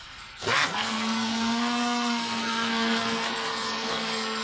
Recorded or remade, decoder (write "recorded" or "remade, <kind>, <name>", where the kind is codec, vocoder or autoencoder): remade, codec, SNAC